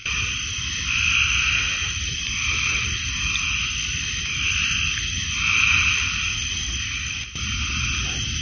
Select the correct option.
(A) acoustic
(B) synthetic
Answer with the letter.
A